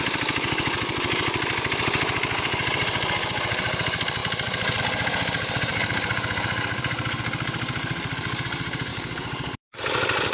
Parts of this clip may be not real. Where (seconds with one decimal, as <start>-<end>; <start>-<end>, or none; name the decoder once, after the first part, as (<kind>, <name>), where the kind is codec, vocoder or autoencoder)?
8.9-9.8 (codec, DAC)